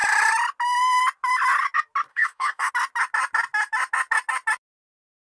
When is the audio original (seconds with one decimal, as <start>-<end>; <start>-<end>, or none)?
0.0-2.1; 2.7-5.3